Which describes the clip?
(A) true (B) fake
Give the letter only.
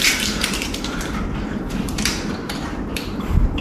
B